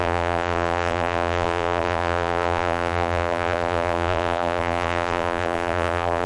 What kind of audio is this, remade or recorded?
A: remade